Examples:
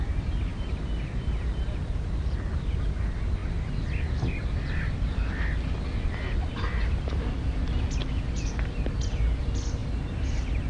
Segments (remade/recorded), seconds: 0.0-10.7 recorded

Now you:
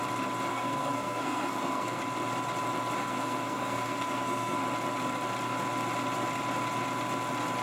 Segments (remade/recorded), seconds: 0.0-0.5 recorded; 0.5-2.0 remade; 2.0-3.0 recorded; 3.0-4.6 remade; 4.6-7.6 recorded

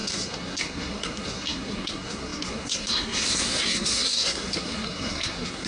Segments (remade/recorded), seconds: 0.0-5.7 remade

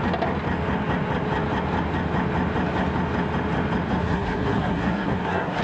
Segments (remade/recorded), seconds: 0.0-4.0 recorded; 4.0-5.6 remade

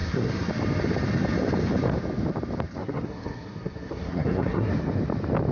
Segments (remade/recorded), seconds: 0.0-0.5 remade; 0.5-2.8 recorded; 2.8-4.7 remade; 4.7-5.5 recorded

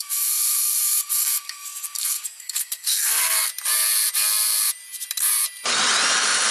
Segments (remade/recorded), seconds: 0.0-3.5 remade; 3.5-6.5 recorded